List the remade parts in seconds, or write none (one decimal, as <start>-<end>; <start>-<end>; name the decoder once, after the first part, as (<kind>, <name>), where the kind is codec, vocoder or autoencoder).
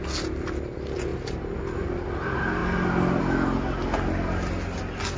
none